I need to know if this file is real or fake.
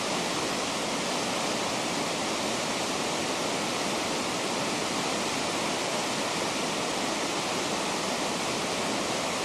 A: real